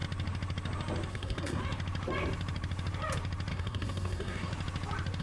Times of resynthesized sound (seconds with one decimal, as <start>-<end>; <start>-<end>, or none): 1.1-1.6; 3.5-4.5